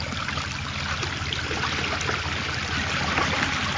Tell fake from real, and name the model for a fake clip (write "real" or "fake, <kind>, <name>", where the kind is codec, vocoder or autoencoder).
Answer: real